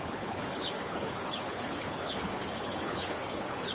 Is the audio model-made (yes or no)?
yes